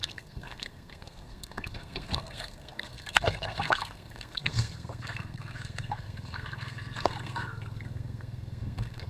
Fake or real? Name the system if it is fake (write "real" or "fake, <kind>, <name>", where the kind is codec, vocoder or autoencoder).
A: fake, codec, SNAC